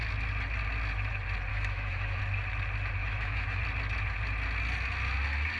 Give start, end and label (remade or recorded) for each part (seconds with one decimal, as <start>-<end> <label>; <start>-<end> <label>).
0.0-1.5 recorded; 1.5-2.2 remade; 2.2-3.0 recorded; 3.0-3.6 remade; 3.6-5.6 recorded